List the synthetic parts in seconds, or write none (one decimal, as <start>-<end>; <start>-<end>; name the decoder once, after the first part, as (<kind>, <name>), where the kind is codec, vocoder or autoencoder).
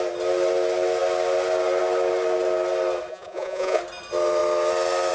3.1-3.8 (vocoder, Vocos)